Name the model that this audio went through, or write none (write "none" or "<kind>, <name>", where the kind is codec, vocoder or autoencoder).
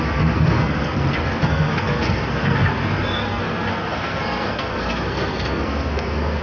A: codec, SNAC